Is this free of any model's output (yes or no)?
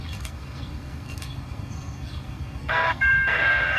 no